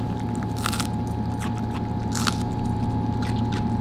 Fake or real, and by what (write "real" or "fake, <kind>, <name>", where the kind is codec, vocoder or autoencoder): real